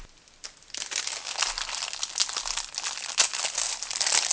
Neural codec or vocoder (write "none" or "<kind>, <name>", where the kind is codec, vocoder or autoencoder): none